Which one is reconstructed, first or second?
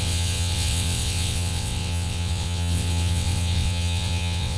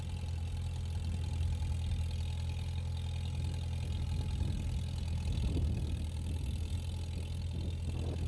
first